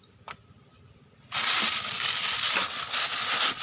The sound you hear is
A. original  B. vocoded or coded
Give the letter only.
A